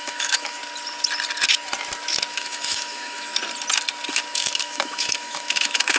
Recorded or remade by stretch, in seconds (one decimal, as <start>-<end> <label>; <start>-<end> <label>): 0.0-0.6 remade; 0.6-2.3 recorded; 2.3-3.3 remade; 3.3-4.1 recorded; 4.1-6.0 remade